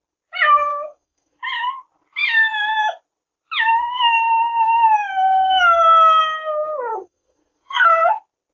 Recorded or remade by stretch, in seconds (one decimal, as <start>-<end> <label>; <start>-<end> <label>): 0.0-0.7 recorded; 0.7-1.4 remade; 1.4-6.9 recorded; 6.9-8.1 remade; 8.1-8.5 recorded